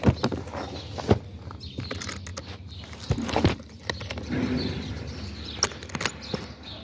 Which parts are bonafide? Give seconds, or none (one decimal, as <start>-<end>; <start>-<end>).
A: 0.0-6.8